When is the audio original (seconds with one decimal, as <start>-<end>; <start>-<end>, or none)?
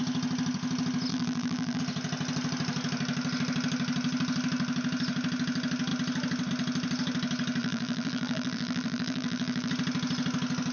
0.0-1.1; 1.8-7.6; 9.7-10.7